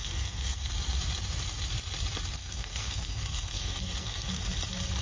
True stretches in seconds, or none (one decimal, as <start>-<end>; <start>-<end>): 0.7-2.4; 4.4-5.0

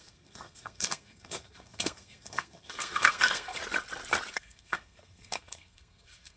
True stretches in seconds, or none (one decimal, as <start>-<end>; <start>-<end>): 3.6-4.3

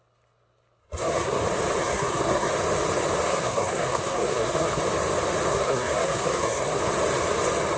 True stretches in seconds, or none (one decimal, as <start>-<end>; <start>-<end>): 0.0-0.8; 1.4-1.8; 2.5-3.3; 4.8-5.5; 6.8-7.8

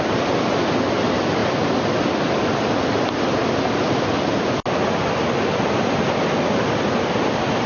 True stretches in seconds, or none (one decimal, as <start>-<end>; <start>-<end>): 0.0-7.7